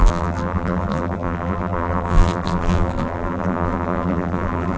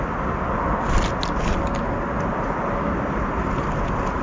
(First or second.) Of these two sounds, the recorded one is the second